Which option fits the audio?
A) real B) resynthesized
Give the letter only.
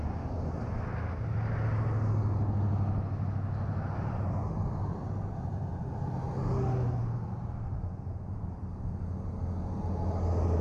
A